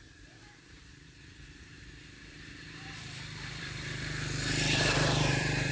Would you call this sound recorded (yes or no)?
no